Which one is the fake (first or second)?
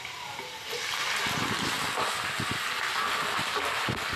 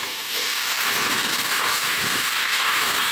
second